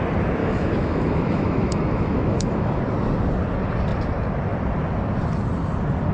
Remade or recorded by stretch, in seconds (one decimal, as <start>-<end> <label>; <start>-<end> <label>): 0.0-0.4 recorded; 0.4-2.8 remade; 2.8-6.1 recorded